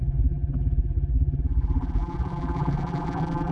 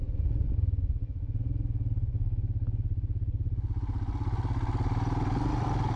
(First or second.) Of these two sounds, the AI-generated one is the first